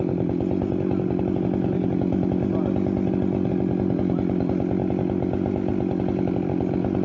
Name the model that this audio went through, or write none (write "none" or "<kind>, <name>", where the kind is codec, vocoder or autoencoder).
none